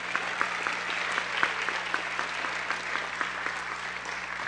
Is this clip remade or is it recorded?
recorded